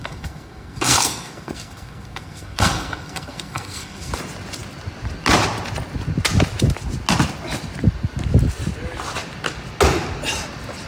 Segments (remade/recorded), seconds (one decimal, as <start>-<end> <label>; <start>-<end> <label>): 0.0-4.1 remade; 4.1-10.9 recorded